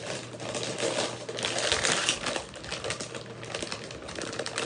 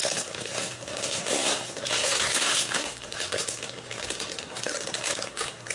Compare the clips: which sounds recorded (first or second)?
first